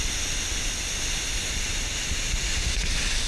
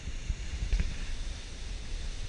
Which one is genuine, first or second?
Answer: first